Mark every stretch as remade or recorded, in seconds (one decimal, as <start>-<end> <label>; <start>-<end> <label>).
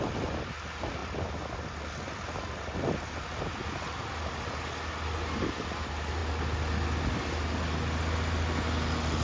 0.0-9.2 recorded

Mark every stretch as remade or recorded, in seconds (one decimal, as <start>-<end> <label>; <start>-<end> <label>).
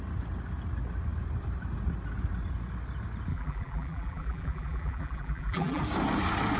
0.0-3.3 recorded; 3.3-5.8 remade; 5.8-6.6 recorded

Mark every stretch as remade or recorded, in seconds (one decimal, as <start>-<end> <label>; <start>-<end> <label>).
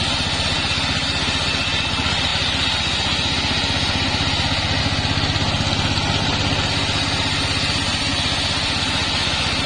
0.0-9.7 recorded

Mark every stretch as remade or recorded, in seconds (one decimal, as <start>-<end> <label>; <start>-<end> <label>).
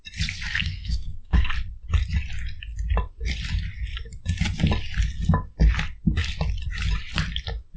0.0-0.6 recorded; 0.6-1.5 remade; 1.5-7.8 recorded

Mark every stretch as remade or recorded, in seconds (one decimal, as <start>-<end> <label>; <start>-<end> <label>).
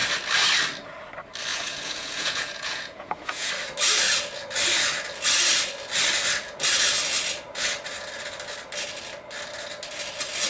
0.0-1.5 recorded; 1.5-3.5 remade; 3.5-10.5 recorded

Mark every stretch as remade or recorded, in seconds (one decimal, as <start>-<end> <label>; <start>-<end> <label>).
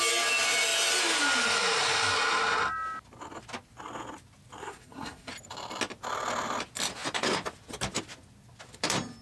0.0-4.6 recorded; 4.6-5.3 remade; 5.3-9.2 recorded